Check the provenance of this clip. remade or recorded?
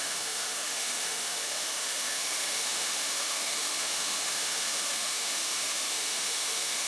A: remade